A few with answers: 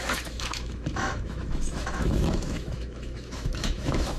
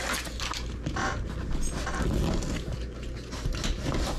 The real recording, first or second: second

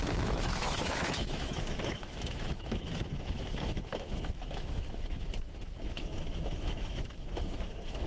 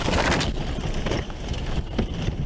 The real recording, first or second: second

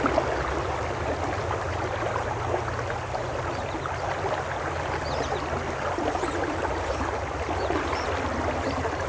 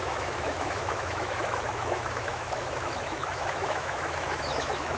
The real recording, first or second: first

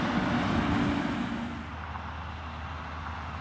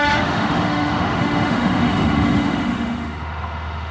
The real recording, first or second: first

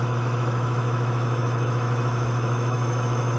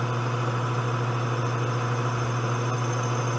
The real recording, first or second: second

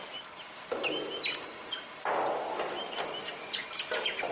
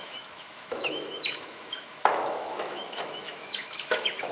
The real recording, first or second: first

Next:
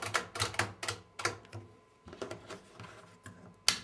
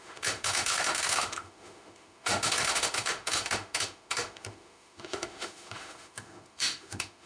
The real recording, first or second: first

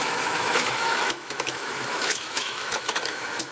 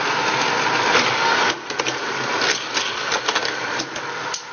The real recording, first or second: second